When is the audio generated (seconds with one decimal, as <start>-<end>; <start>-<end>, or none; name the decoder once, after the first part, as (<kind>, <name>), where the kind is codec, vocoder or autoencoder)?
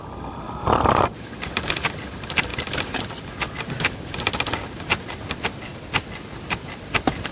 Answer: 0.0-2.5 (vocoder, BigVGAN v2); 5.9-7.3